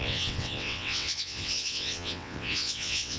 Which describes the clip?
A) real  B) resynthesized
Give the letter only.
B